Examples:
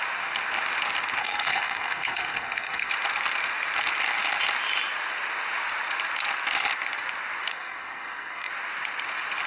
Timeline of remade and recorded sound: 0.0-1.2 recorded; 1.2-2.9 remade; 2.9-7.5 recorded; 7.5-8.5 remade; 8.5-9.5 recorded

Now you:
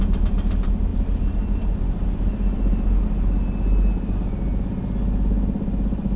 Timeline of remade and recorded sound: 0.0-6.2 recorded

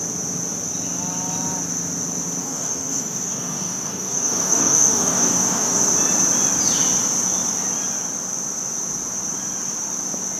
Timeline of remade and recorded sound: 0.0-2.4 recorded; 2.4-5.8 remade; 5.8-10.4 recorded

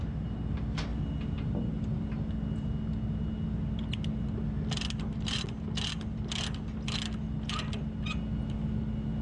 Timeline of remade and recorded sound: 0.0-9.2 recorded

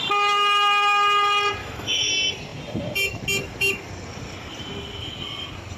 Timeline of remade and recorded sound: 0.0-1.6 recorded; 1.6-2.1 remade; 2.1-5.8 recorded

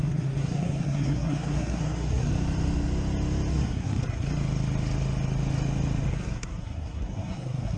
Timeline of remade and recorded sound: 0.0-2.3 remade; 2.3-3.5 recorded; 3.5-4.0 remade; 4.0-6.1 recorded; 6.1-7.8 remade